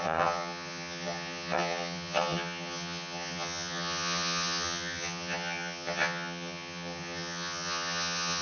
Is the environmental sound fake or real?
fake